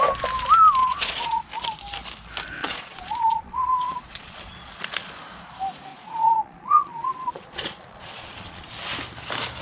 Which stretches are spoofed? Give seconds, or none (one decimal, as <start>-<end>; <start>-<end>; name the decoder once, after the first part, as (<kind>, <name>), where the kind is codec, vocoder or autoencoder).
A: 0.8-1.4 (vocoder, Vocos); 2.6-5.1; 5.9-8.7